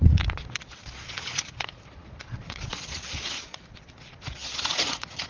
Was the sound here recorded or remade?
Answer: remade